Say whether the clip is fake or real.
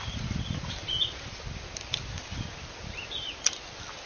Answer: real